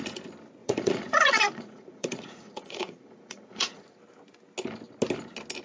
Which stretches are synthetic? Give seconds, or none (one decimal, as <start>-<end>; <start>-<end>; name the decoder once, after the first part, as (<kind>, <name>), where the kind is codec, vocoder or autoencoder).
0.6-4.0 (vocoder, Vocos)

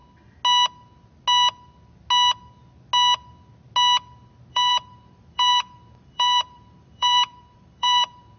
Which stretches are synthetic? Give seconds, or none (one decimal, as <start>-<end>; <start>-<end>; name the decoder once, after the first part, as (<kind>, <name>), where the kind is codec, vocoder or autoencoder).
4.5-8.4 (vocoder, BigVGAN v2)

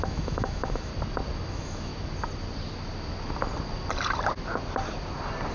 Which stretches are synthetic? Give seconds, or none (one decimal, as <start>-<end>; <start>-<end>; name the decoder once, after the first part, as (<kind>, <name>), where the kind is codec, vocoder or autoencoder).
0.0-0.9 (autoencoder, DAC-VAE); 1.5-1.9

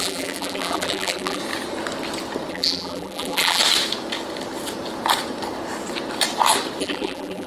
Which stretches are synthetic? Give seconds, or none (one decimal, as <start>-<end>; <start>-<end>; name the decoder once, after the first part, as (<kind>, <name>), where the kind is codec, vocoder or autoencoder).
0.0-1.4 (vocoder, BigVGAN v2); 2.5-3.6; 6.8-7.5